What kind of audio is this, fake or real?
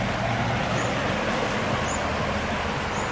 real